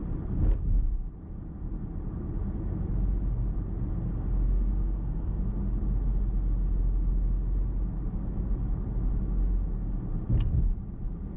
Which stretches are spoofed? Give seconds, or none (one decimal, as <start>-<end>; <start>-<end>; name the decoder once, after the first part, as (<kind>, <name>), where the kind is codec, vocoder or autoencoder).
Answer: 4.5-5.4 (codec, SNAC)